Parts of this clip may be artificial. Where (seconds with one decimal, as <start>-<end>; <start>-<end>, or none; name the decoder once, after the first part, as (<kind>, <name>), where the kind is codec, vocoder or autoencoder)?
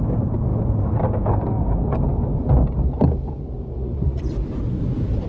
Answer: 3.7-4.2 (vocoder, Vocos)